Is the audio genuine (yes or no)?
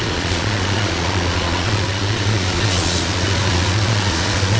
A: no